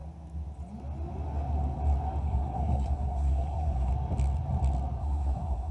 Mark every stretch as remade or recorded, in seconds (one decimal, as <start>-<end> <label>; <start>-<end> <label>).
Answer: 0.0-2.2 recorded; 2.2-3.9 remade; 3.9-5.0 recorded; 5.0-5.7 remade